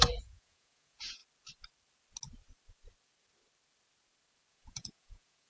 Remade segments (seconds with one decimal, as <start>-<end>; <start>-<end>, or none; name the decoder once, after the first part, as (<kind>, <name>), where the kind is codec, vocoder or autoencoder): 0.0-1.2 (vocoder, Vocos); 4.5-5.5